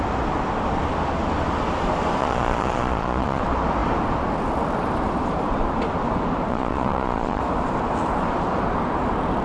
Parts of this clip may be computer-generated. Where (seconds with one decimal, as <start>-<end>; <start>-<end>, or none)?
2.2-3.4; 6.5-7.4